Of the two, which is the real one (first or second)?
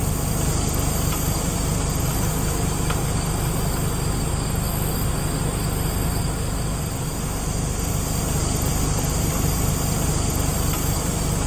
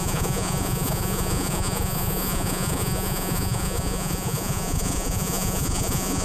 first